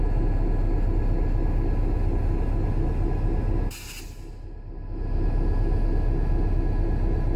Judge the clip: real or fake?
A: real